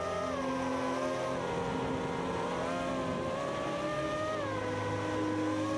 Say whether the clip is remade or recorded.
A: recorded